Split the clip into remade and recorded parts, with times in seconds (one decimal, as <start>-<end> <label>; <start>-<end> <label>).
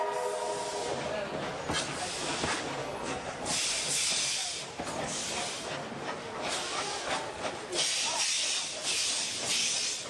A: 0.0-2.8 recorded; 2.8-3.4 remade; 3.4-10.1 recorded